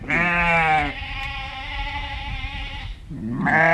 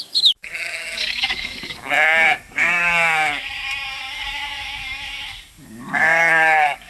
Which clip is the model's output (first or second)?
second